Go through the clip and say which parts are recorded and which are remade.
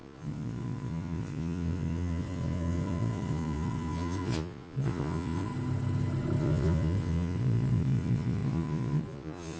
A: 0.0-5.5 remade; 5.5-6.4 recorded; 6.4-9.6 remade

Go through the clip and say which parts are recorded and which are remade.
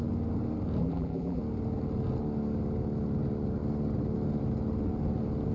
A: 0.0-0.8 recorded; 0.8-1.4 remade; 1.4-5.5 recorded